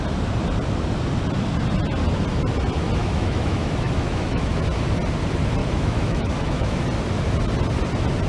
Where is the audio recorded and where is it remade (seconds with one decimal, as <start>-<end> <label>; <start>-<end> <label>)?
0.0-3.0 recorded; 3.0-4.5 remade; 4.5-5.6 recorded; 5.6-6.8 remade; 6.8-8.3 recorded